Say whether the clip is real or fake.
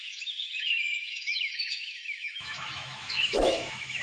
fake